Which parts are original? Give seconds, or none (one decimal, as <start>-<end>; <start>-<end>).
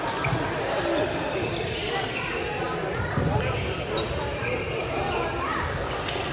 0.0-6.3